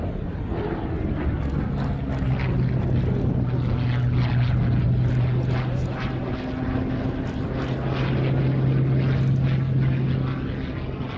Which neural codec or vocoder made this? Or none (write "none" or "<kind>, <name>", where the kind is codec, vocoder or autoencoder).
none